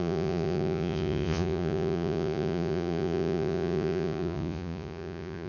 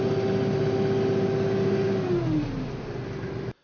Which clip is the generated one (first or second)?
first